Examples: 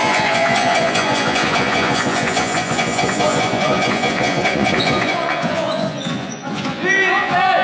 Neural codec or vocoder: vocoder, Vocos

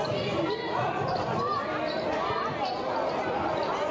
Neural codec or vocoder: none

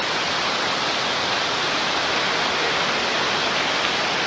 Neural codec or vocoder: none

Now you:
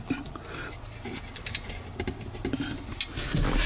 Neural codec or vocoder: none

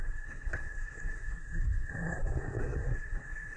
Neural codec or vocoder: codec, SNAC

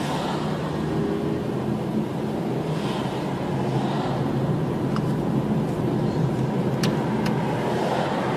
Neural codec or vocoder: none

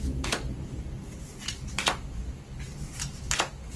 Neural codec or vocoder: none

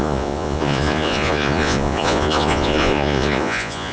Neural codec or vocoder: vocoder, Vocos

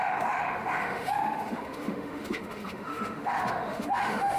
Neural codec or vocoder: autoencoder, DAC-VAE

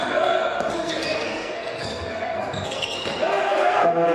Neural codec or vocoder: codec, SNAC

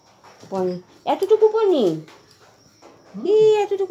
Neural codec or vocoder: none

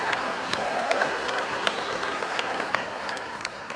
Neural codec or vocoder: codec, SNAC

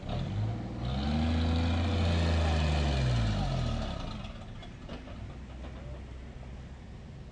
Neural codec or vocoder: none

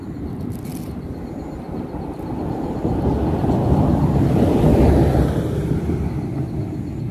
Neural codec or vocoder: none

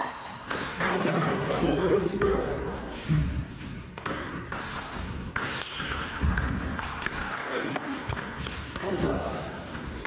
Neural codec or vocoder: codec, SNAC